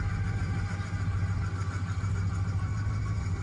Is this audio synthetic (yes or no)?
no